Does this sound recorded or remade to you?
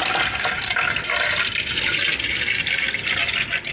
recorded